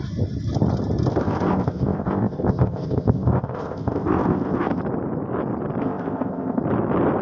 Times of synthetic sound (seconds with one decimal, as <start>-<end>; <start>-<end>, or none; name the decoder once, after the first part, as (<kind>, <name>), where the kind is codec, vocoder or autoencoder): 1.1-4.8 (codec, ZipCodec); 5.8-6.6